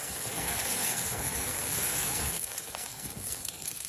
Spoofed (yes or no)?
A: yes